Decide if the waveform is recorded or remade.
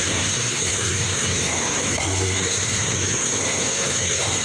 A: remade